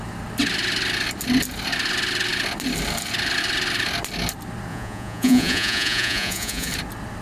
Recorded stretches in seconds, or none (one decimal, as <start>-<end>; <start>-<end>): 0.0-4.7; 6.7-7.2